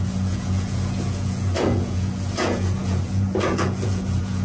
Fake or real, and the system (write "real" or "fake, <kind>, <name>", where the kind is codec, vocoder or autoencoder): fake, vocoder, Vocos